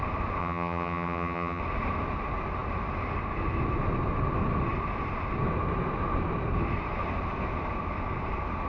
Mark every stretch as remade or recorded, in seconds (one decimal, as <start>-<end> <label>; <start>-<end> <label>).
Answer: 0.0-0.4 recorded; 0.4-1.6 remade; 1.6-8.7 recorded